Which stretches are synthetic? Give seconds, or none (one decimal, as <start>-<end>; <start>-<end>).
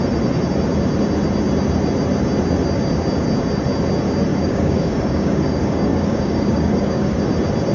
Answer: 4.3-7.2